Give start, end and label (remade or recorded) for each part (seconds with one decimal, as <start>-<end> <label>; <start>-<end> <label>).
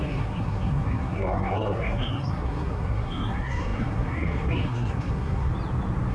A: 0.0-5.5 remade; 5.5-6.1 recorded